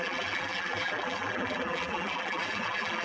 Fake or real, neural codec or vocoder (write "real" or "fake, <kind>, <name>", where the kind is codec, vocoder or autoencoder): fake, vocoder, BigVGAN v2